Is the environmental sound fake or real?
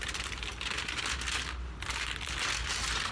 real